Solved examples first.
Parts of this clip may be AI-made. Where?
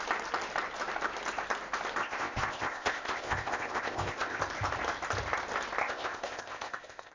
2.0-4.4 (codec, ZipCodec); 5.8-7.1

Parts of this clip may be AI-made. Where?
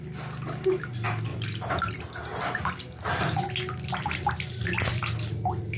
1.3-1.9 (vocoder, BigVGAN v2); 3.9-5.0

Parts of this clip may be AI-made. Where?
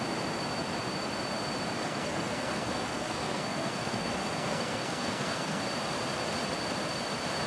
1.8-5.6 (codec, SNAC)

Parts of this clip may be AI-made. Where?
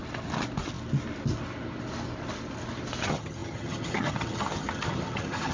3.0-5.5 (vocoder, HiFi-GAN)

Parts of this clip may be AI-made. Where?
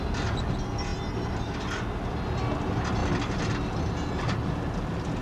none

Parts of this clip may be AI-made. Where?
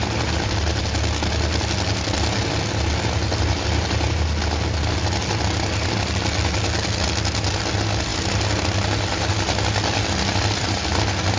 none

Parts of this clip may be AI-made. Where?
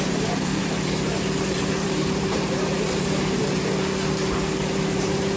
0.0-3.6 (vocoder, BigVGAN v2); 4.6-5.4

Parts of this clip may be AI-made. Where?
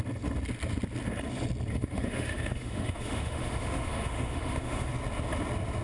1.7-4.9 (autoencoder, DAC-VAE)